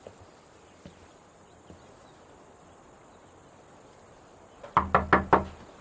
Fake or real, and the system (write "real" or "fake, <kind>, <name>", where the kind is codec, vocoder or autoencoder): real